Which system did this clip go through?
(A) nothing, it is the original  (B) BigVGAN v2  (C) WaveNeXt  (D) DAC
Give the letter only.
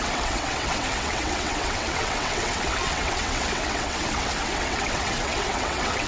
C